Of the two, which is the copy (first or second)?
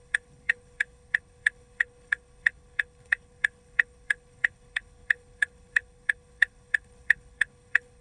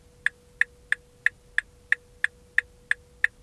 first